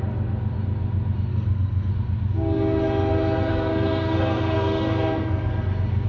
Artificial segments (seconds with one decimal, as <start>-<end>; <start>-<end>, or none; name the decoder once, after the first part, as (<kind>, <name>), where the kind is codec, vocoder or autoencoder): 1.3-1.9 (codec, SNAC); 3.5-5.5